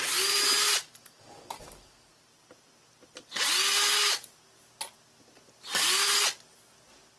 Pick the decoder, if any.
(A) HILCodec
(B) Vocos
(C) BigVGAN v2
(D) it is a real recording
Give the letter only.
D